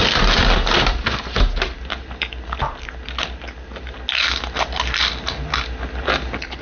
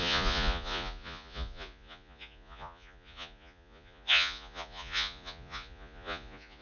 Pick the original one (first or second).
first